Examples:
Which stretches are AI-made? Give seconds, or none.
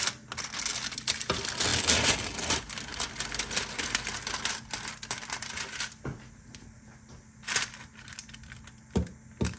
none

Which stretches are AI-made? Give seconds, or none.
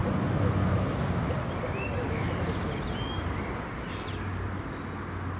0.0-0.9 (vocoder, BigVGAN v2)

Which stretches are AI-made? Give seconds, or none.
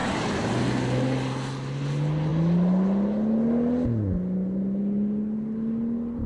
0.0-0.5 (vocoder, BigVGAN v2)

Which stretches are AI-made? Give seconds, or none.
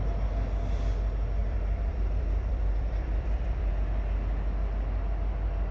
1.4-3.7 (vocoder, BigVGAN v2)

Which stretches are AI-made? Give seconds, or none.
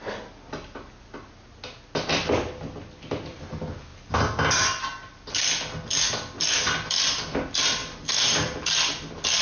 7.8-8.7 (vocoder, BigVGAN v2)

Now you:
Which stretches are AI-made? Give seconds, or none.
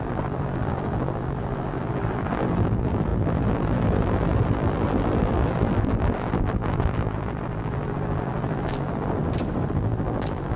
0.0-9.2 (vocoder, BigVGAN v2); 9.7-10.6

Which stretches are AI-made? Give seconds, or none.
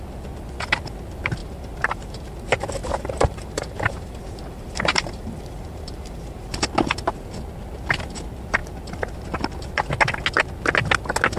1.4-2.3 (vocoder, BigVGAN v2); 2.8-6.6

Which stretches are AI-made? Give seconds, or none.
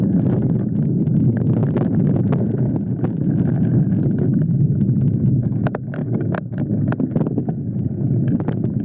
0.0-6.0 (vocoder, BigVGAN v2)